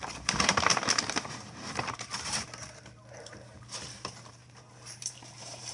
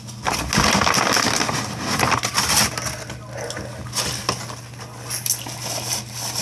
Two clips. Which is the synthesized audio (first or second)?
first